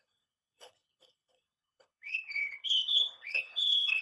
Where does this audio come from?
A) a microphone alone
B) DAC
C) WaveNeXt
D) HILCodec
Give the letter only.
D